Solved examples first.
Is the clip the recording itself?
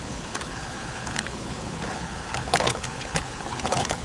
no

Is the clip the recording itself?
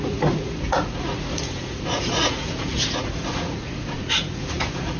no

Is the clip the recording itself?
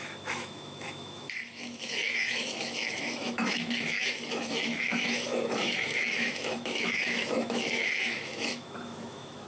no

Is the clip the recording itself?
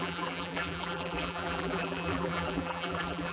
no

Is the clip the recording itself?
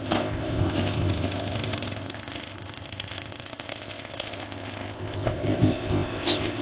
no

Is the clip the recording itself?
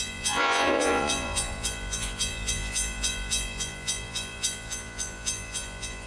no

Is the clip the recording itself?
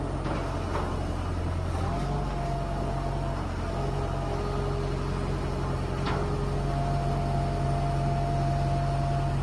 yes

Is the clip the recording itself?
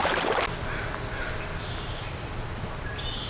yes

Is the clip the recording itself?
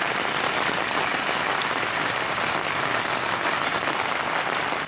yes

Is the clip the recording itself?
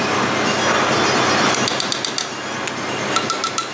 yes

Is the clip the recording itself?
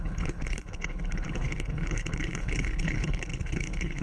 no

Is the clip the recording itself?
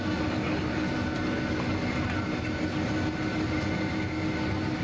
yes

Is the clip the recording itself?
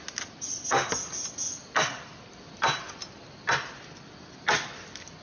yes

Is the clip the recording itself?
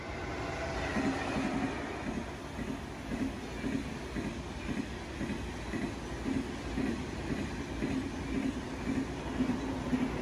yes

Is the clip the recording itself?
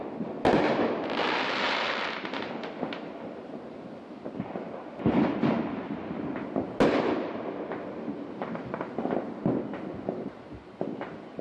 yes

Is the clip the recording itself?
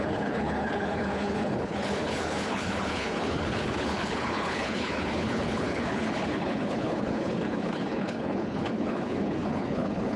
no